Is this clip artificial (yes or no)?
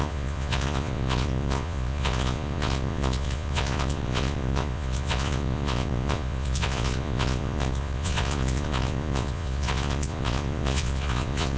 yes